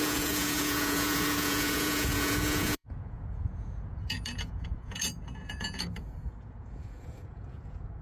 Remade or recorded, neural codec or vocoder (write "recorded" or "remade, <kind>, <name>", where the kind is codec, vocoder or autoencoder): remade, vocoder, Vocos